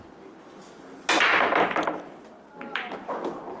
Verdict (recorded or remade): recorded